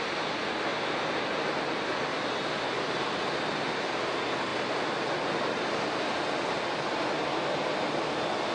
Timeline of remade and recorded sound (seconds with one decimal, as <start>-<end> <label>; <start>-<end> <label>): 0.0-8.5 recorded